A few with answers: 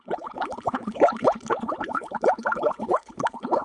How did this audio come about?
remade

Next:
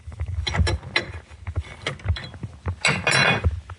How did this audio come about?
recorded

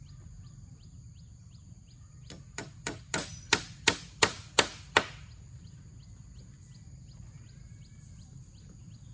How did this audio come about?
recorded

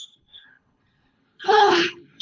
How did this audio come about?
remade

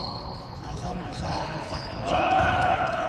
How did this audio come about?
remade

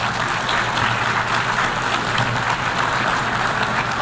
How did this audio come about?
recorded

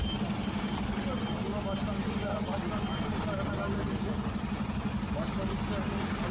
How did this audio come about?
recorded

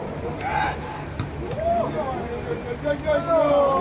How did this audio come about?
recorded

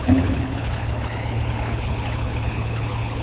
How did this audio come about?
remade